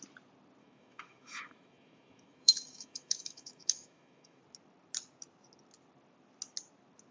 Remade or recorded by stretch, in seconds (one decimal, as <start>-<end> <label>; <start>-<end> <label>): 0.0-0.6 recorded; 0.6-4.4 remade; 4.4-7.1 recorded

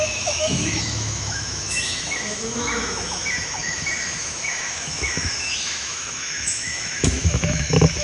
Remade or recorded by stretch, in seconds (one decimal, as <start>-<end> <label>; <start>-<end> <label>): 0.0-8.0 remade

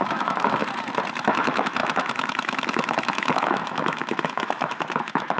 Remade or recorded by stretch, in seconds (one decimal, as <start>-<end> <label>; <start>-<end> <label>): 0.0-0.6 remade; 0.6-1.2 recorded; 1.2-5.4 remade